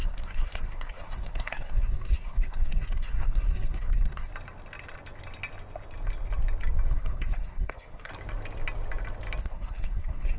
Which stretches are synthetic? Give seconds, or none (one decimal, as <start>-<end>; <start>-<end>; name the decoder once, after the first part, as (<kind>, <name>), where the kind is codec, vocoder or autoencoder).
0.0-4.3 (codec, SNAC); 6.9-8.1; 9.4-10.4